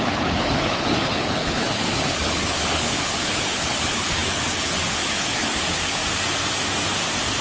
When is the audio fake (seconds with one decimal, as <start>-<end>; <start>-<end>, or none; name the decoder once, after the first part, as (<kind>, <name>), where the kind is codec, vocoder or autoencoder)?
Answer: 0.0-6.0 (codec, HILCodec)